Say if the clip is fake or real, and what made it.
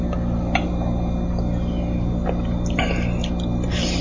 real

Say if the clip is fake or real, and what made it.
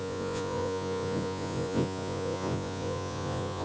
fake, vocoder, Vocos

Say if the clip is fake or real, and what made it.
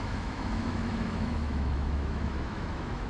fake, autoencoder, DAC-VAE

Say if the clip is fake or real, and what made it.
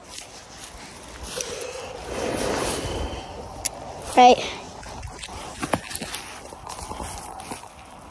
real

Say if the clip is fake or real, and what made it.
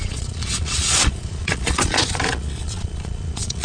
fake, vocoder, Vocos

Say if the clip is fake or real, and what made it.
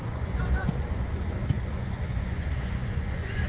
fake, vocoder, Vocos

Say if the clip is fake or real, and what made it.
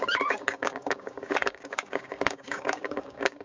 fake, codec, DAC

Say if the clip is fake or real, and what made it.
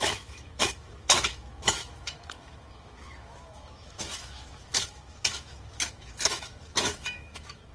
fake, autoencoder, DAC-VAE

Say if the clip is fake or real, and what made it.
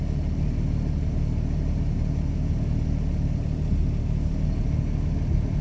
real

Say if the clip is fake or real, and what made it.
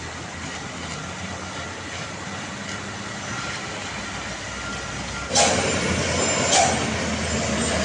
real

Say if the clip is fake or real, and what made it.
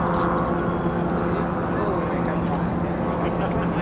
real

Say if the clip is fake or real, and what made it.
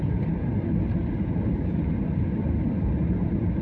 real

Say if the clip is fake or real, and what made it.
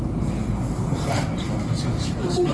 real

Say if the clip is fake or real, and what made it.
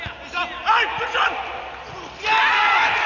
real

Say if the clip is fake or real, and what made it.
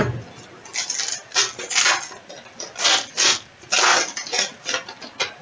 real